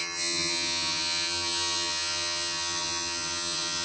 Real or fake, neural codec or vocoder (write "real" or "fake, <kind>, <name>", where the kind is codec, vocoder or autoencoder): fake, vocoder, HiFi-GAN